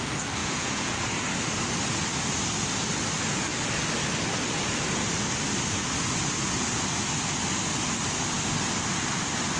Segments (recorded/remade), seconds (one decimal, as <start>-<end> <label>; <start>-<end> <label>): 0.0-0.4 recorded; 0.4-0.9 remade; 0.9-9.6 recorded